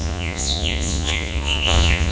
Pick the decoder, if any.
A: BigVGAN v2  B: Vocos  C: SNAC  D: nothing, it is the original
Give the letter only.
B